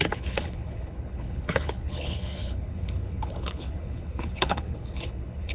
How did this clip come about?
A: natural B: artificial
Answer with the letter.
B